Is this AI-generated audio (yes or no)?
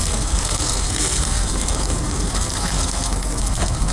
yes